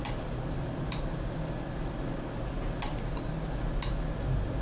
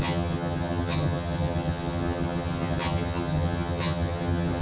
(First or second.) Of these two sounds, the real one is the first